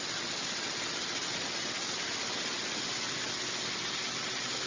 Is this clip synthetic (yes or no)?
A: no